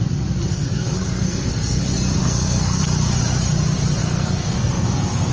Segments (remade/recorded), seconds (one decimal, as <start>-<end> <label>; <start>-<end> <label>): 0.0-0.5 recorded; 0.5-1.8 remade; 1.8-2.2 recorded; 2.2-2.8 remade; 2.8-4.0 recorded; 4.0-5.3 remade